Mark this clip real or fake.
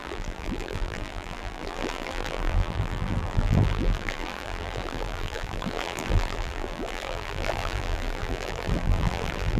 fake